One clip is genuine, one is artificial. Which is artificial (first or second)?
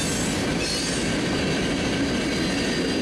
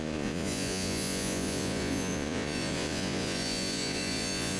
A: second